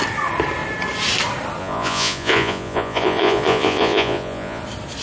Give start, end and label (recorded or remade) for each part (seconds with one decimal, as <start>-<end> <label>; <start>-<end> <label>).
0.0-1.6 recorded; 1.6-4.6 remade; 4.6-5.0 recorded